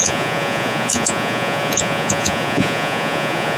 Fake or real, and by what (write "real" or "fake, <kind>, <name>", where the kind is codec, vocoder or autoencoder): fake, vocoder, Vocos